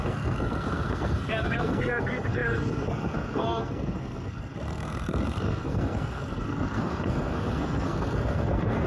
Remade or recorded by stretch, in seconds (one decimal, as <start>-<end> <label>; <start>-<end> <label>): 0.0-8.9 remade